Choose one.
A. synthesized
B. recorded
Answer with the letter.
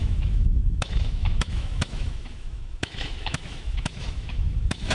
A